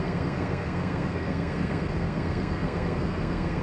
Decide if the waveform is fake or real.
fake